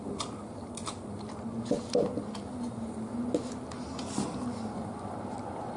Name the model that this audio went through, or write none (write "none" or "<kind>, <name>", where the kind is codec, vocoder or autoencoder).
none